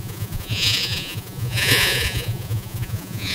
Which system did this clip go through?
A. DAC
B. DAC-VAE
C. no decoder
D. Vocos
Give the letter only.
D